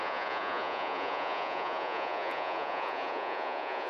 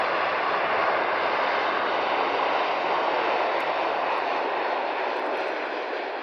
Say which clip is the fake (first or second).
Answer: first